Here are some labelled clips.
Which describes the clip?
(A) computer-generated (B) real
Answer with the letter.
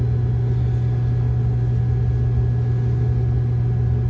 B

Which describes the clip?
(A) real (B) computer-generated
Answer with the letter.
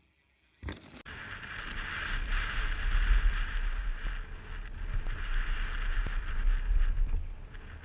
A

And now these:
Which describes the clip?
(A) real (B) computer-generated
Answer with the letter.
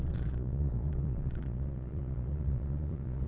B